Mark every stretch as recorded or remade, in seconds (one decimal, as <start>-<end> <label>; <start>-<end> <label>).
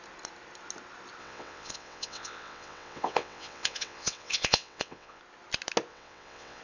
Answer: 0.0-1.2 recorded; 1.2-5.2 remade; 5.2-5.9 recorded; 5.9-6.6 remade